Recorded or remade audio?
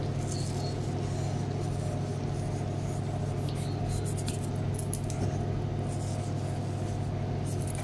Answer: recorded